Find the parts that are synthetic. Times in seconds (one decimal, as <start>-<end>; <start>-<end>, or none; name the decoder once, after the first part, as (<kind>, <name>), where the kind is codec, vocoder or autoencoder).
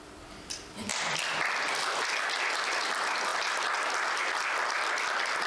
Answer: none